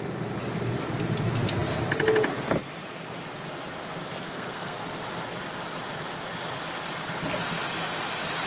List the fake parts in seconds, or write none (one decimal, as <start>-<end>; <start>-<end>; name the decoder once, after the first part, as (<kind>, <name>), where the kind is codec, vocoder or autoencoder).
4.3-4.8 (codec, SNAC)